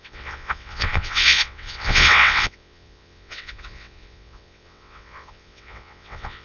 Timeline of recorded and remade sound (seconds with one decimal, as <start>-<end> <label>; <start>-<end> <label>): 0.0-6.4 remade